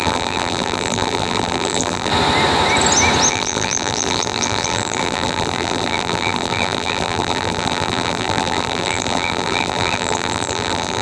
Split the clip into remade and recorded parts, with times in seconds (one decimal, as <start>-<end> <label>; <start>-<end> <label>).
0.0-2.1 remade; 2.1-3.3 recorded; 3.3-11.0 remade